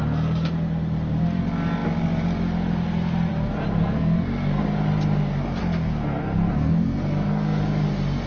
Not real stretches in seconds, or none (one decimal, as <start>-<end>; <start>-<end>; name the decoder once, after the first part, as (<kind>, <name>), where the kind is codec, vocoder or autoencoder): 3.8-4.6 (codec, SNAC); 5.6-7.6